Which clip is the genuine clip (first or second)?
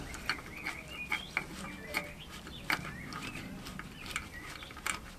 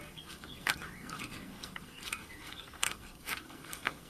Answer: first